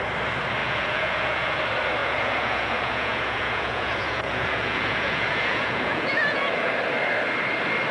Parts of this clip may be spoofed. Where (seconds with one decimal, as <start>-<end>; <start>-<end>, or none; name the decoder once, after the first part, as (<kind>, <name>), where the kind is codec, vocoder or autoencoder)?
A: 0.6-1.6 (vocoder, Vocos); 2.0-6.7